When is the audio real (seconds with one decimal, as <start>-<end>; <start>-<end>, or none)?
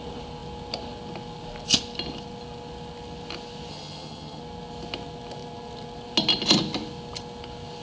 0.0-3.7; 4.4-7.8